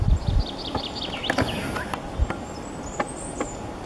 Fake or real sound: real